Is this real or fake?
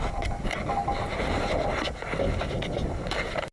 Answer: real